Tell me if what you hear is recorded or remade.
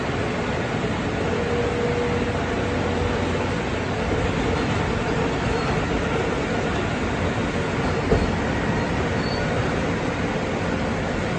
recorded